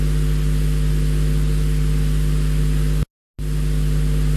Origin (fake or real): real